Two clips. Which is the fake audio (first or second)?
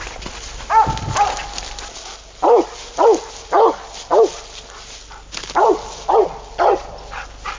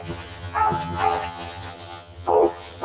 second